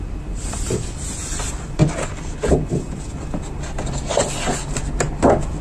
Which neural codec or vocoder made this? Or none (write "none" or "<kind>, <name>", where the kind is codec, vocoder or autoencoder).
none